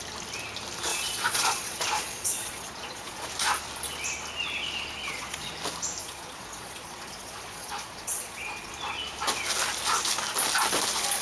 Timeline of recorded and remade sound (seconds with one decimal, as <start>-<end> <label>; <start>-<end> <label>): 0.0-0.9 recorded; 0.9-3.3 remade; 3.3-5.0 recorded; 5.0-5.5 remade; 5.5-6.0 recorded; 6.0-8.7 remade; 8.7-11.2 recorded